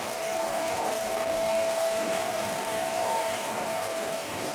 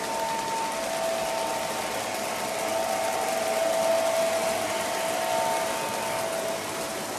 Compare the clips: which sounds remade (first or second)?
first